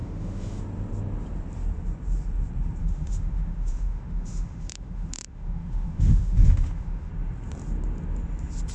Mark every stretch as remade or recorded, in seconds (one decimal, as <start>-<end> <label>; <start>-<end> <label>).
0.0-0.6 remade; 0.6-2.8 recorded; 2.8-7.1 remade; 7.1-8.7 recorded